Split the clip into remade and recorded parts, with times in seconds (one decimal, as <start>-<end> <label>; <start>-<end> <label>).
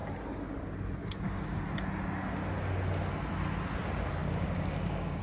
0.0-4.2 recorded; 4.2-5.2 remade